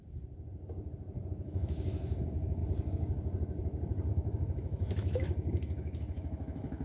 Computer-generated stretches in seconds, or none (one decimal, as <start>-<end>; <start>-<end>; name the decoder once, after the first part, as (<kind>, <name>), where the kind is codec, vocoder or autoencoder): 1.3-2.6 (autoencoder, DAC-VAE); 4.1-6.8